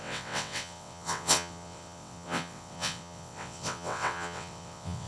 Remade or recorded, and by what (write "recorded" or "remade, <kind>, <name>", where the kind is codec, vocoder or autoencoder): remade, vocoder, WaveNeXt